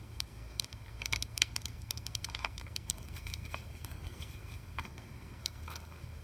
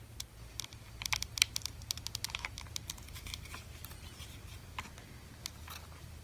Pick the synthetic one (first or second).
first